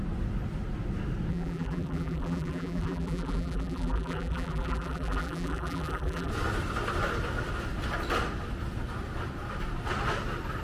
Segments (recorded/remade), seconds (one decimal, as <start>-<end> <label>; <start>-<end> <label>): 0.0-1.3 recorded; 1.3-6.3 remade; 6.3-10.6 recorded

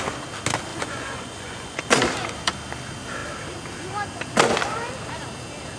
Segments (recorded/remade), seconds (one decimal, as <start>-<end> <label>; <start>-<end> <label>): 0.0-0.7 recorded; 0.7-1.8 remade; 1.8-5.8 recorded

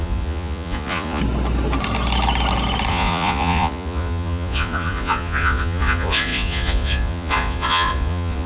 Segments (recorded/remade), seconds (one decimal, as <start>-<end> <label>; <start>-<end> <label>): 0.0-1.2 remade; 1.2-2.9 recorded; 2.9-8.5 remade

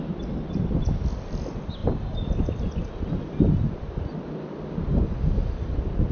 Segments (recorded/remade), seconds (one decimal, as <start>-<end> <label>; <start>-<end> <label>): 0.0-6.1 recorded

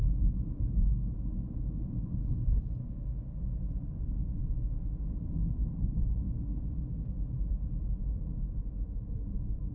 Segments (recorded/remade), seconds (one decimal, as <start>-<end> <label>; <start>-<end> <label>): 0.0-4.4 recorded; 4.4-5.2 remade; 5.2-9.7 recorded

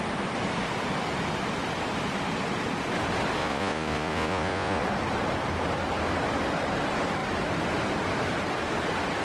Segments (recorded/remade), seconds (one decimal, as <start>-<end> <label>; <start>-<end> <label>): 0.0-3.4 recorded; 3.4-4.8 remade; 4.8-9.2 recorded

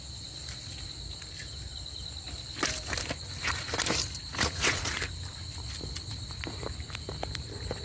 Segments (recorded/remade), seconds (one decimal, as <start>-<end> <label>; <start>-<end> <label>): 0.0-4.3 recorded; 4.3-4.9 remade; 4.9-7.8 recorded

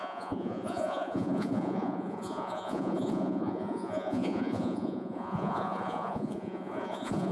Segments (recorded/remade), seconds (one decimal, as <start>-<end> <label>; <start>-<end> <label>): 0.0-7.3 remade